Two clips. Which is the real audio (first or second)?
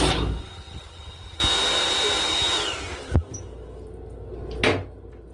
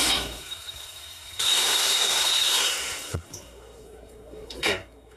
first